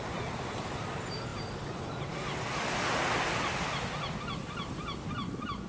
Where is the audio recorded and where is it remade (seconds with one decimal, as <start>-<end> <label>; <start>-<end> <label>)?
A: 0.0-5.7 recorded